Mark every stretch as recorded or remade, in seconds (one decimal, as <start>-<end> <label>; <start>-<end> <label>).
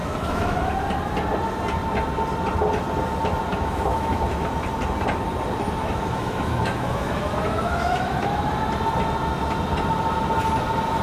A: 0.0-0.7 remade; 0.7-3.5 recorded; 3.5-4.2 remade; 4.2-5.8 recorded; 5.8-8.5 remade; 8.5-11.0 recorded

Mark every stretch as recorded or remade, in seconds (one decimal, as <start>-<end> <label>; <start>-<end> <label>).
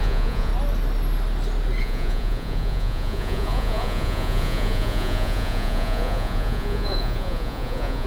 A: 0.0-0.5 remade; 0.5-1.8 recorded; 1.8-8.1 remade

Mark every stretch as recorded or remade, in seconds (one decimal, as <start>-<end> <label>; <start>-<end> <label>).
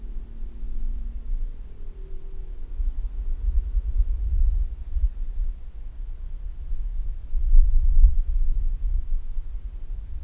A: 0.0-2.7 recorded; 2.7-5.5 remade; 5.5-10.2 recorded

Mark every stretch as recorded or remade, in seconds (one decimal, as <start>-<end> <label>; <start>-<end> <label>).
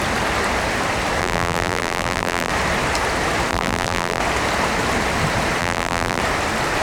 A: 0.0-1.2 recorded; 1.2-2.5 remade; 2.5-3.5 recorded; 3.5-4.2 remade; 4.2-5.6 recorded; 5.6-6.2 remade; 6.2-6.8 recorded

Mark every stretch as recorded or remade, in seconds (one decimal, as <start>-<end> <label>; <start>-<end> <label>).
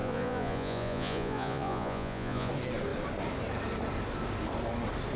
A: 0.0-2.5 remade; 2.5-5.2 recorded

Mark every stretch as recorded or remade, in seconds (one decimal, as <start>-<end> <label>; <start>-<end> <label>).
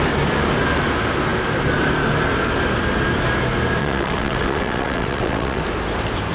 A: 0.0-3.8 recorded; 3.8-5.6 remade; 5.6-6.3 recorded